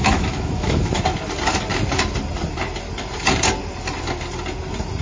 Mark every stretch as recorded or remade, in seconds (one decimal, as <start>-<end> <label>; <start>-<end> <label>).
0.0-1.0 remade; 1.0-5.0 recorded